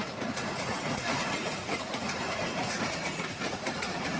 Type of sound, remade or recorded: remade